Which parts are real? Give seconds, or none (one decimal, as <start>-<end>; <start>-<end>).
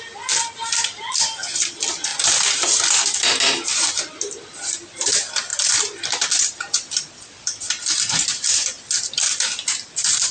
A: 0.0-10.3